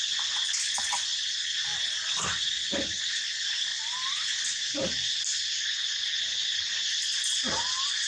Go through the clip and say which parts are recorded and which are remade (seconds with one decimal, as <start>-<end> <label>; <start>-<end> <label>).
0.0-8.1 recorded

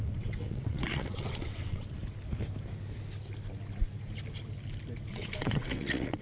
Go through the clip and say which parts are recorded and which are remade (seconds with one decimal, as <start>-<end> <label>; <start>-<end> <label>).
0.0-2.0 remade; 2.0-5.1 recorded; 5.1-6.2 remade